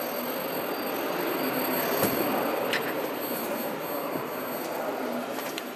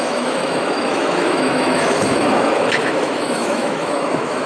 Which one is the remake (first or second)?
second